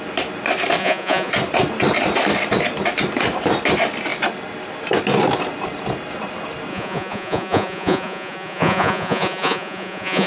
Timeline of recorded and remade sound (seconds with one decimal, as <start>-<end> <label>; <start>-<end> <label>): 0.0-0.8 recorded; 0.8-1.3 remade; 1.3-6.7 recorded; 6.7-10.3 remade